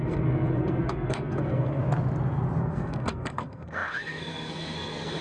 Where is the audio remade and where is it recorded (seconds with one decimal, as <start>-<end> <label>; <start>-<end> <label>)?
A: 0.0-1.8 remade; 1.8-2.6 recorded; 2.6-5.2 remade